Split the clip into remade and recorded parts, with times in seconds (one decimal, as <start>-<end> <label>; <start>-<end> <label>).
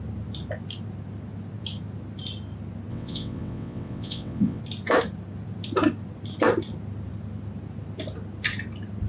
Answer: 0.0-2.9 recorded; 2.9-4.6 remade; 4.6-9.1 recorded